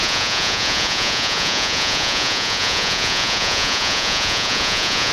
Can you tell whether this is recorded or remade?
remade